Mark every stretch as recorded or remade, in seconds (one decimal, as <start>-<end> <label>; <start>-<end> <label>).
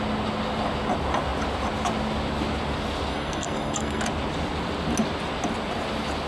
0.0-3.1 recorded; 3.1-4.0 remade; 4.0-6.3 recorded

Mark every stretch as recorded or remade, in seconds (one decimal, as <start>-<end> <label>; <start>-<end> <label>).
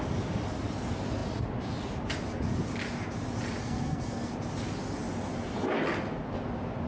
0.0-3.6 recorded; 3.6-4.3 remade; 4.3-6.9 recorded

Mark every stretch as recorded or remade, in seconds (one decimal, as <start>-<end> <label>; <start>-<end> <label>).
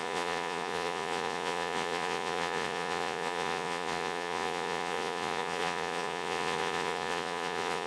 0.0-7.9 remade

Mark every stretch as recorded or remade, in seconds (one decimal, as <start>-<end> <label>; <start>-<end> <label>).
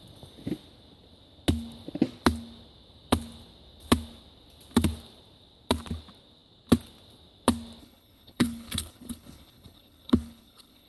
0.0-7.8 recorded; 7.8-10.9 remade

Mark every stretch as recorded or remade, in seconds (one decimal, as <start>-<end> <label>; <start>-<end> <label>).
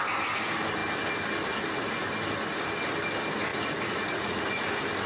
0.0-3.5 recorded; 3.5-4.6 remade; 4.6-5.1 recorded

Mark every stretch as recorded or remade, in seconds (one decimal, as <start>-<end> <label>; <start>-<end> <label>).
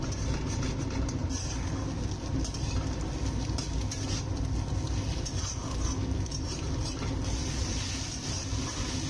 0.0-9.1 recorded